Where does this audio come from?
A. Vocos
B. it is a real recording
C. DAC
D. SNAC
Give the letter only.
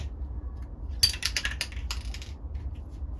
B